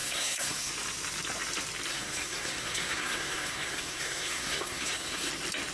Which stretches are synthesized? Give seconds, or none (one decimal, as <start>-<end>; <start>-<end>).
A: 0.0-0.7; 1.9-5.3